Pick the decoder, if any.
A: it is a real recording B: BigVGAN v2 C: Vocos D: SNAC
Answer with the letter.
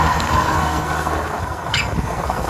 D